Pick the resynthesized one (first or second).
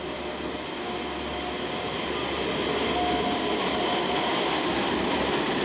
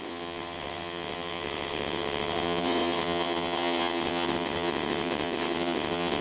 second